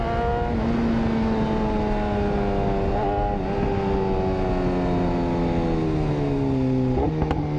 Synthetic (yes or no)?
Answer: no